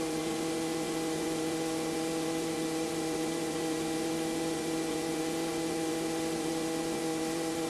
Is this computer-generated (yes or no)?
yes